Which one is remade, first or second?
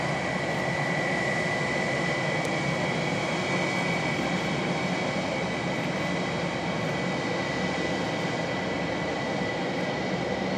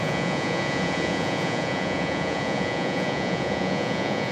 second